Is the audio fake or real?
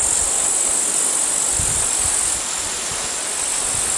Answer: real